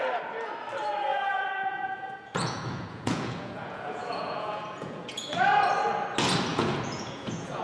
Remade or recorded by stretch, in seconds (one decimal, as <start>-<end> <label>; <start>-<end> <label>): 0.0-1.1 recorded; 1.1-5.4 remade; 5.4-6.5 recorded; 6.5-7.6 remade